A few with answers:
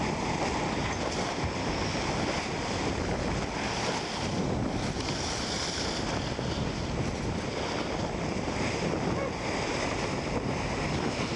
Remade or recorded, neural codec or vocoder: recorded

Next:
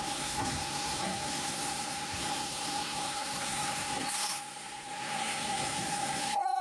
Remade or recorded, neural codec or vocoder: remade, codec, SNAC